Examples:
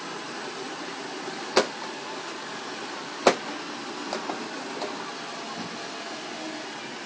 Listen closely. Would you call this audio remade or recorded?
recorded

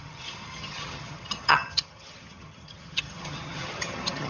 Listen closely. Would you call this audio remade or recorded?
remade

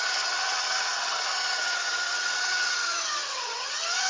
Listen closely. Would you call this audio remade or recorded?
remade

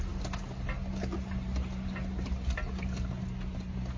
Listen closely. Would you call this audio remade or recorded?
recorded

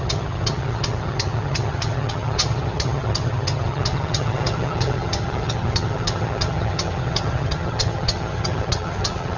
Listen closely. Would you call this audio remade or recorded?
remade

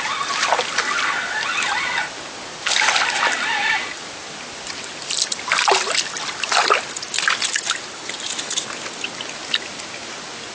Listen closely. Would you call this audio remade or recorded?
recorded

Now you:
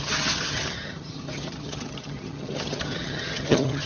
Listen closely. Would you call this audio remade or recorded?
remade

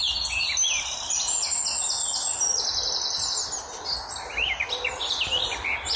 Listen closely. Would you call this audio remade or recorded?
recorded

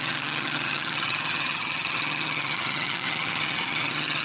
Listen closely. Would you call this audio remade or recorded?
remade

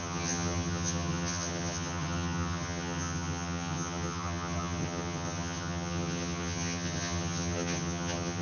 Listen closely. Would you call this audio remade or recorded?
remade